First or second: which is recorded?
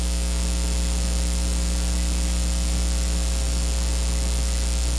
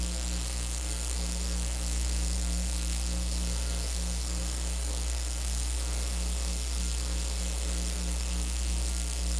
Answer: first